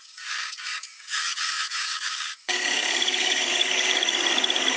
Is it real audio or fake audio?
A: fake